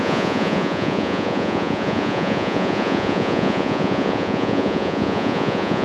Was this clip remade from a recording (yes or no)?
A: yes